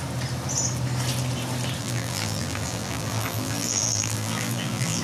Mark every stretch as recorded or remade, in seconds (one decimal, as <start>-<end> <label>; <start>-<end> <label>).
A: 0.0-1.8 recorded; 1.8-5.0 remade